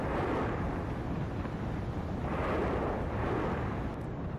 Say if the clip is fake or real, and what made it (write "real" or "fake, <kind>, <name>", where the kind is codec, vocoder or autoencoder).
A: real